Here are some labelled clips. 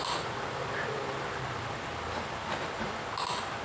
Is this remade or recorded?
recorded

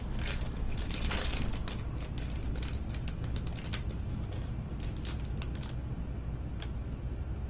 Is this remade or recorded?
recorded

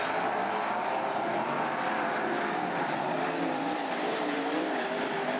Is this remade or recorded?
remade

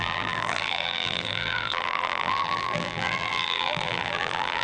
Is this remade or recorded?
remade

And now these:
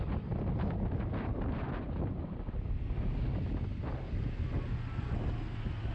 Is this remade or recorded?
recorded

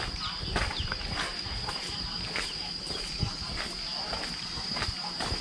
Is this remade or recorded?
recorded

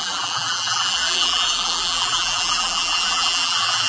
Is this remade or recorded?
remade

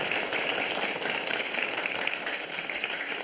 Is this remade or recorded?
remade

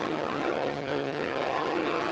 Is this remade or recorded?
remade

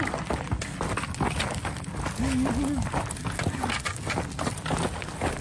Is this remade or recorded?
recorded